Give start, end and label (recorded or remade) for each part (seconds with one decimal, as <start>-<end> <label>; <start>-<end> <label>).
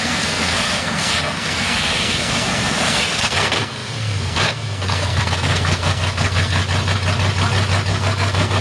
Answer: 0.0-6.6 remade; 6.6-7.9 recorded; 7.9-8.6 remade